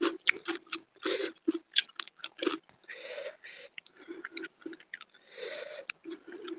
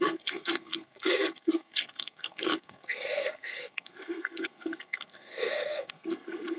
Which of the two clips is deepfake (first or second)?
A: second